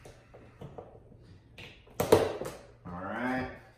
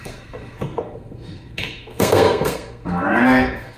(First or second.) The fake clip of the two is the second